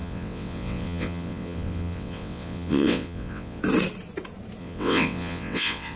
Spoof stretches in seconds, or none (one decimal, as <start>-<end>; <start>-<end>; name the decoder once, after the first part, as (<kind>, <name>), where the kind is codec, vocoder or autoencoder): 0.0-3.6 (vocoder, WaveNeXt); 4.6-6.0